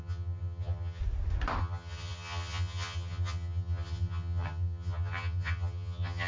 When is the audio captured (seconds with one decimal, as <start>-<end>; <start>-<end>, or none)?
1.0-1.6